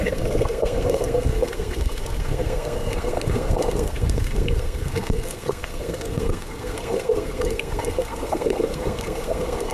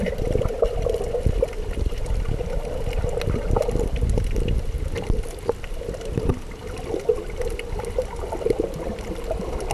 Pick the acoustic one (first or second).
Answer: second